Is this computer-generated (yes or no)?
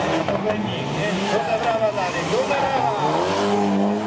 no